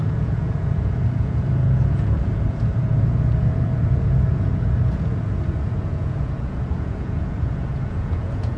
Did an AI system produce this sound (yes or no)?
yes